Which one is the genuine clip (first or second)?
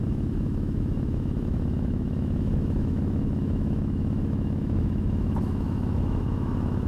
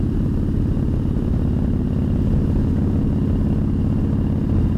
second